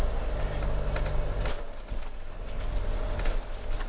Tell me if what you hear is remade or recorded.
recorded